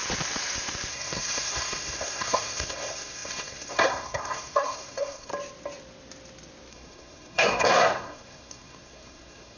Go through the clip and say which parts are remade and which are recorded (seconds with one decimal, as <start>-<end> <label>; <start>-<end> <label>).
0.0-0.9 recorded; 0.9-5.3 remade; 5.3-6.7 recorded; 6.7-9.6 remade